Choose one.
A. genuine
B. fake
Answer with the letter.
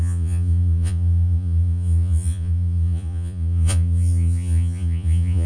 B